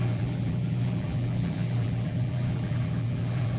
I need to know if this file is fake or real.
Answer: fake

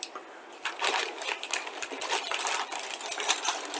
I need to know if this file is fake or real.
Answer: real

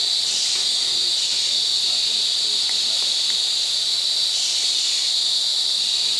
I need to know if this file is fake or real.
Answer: real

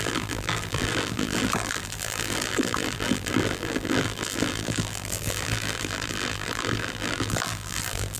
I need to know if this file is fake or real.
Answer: fake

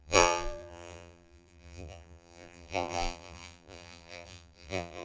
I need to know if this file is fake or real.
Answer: fake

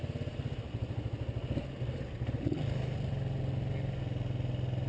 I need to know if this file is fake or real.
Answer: real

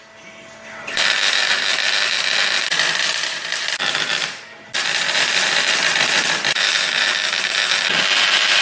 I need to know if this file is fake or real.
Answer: fake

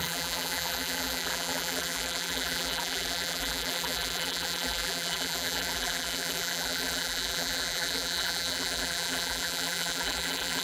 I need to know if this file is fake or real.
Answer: fake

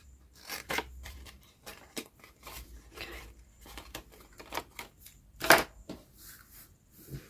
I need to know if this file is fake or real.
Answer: fake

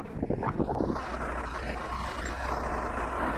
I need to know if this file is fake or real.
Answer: real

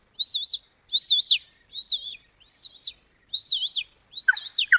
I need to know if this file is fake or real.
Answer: real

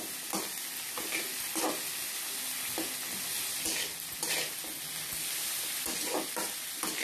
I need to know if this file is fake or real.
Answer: real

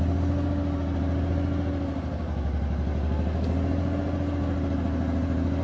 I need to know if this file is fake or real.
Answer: real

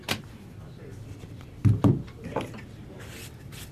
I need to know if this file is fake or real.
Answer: fake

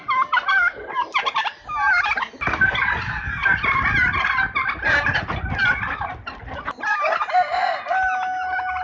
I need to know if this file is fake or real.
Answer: real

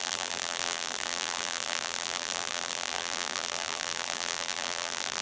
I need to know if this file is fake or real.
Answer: fake